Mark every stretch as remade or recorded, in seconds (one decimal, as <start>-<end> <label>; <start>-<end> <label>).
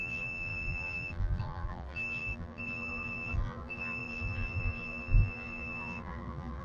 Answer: 0.0-6.6 remade